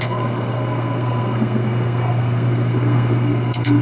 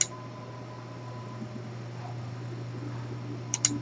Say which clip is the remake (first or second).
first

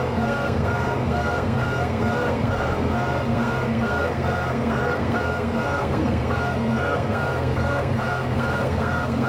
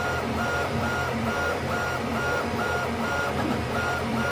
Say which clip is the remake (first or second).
first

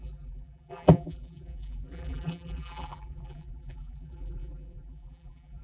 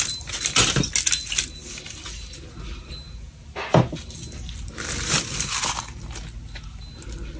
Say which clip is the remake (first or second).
first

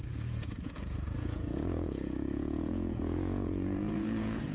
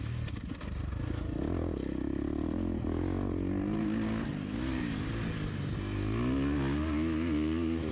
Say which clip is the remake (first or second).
first